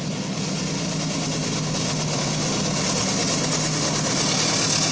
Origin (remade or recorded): recorded